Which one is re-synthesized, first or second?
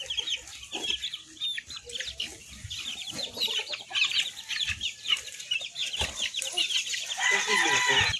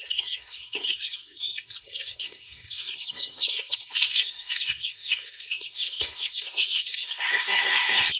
second